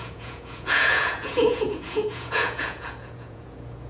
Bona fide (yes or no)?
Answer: no